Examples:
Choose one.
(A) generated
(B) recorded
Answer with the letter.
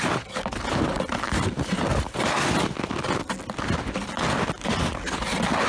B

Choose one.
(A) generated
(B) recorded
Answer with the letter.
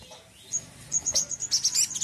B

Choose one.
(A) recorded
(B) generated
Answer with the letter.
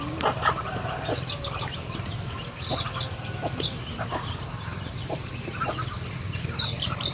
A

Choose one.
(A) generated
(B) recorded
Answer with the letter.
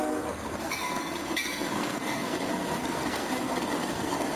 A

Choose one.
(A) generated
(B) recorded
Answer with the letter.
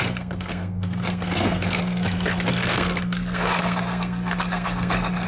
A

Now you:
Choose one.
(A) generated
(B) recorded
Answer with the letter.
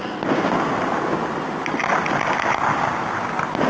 B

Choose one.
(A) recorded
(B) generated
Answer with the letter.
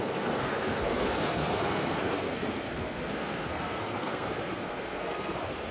B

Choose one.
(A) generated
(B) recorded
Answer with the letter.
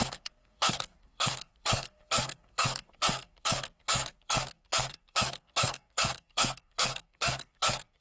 A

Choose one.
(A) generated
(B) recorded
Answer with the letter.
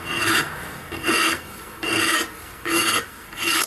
A